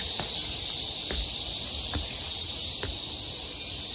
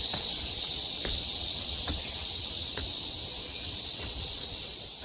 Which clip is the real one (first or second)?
first